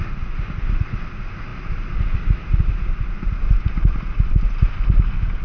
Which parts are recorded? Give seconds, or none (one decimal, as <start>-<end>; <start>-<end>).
0.0-5.4